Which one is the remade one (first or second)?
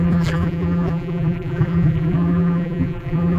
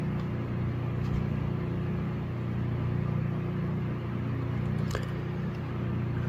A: first